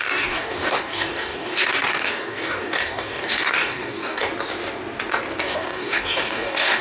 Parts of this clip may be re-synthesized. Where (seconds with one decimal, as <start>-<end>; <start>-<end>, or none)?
0.0-4.3; 5.4-6.8